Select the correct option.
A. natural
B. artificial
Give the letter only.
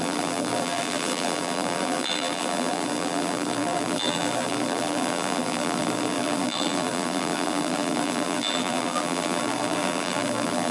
B